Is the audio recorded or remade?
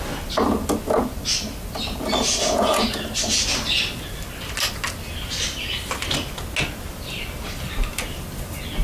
recorded